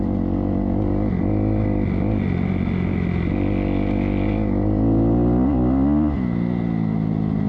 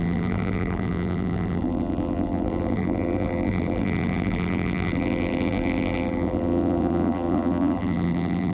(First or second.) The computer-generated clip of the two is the second